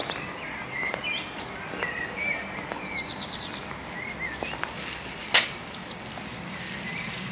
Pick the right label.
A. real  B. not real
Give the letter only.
A